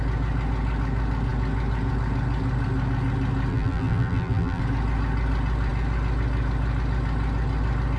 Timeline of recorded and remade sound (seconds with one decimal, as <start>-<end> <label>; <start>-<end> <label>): 0.0-3.5 recorded; 3.5-4.6 remade; 4.6-8.0 recorded